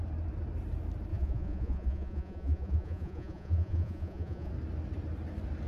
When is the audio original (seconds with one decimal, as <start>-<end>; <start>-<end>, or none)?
0.0-1.1; 4.5-5.7